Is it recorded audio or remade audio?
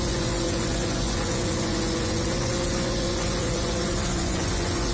remade